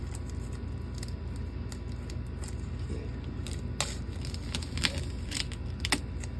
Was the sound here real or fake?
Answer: real